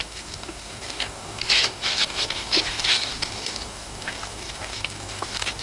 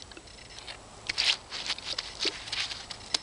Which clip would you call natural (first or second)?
second